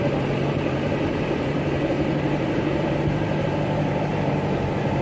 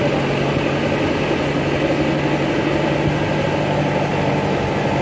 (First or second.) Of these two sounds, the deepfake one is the first